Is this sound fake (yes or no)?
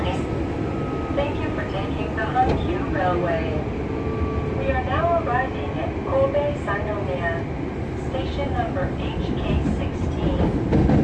no